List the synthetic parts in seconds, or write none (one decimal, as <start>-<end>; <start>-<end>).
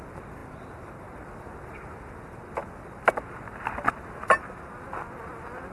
none